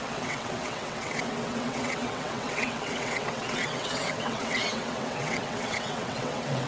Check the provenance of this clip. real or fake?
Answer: fake